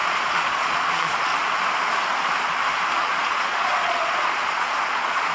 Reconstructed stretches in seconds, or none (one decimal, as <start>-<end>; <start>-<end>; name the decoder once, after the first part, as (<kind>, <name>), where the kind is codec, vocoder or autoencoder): 0.0-1.3 (vocoder, Vocos); 2.9-5.3